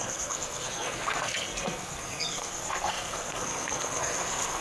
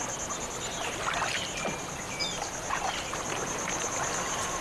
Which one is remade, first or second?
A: first